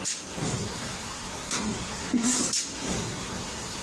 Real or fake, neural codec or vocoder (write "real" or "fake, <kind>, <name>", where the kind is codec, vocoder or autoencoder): fake, codec, SNAC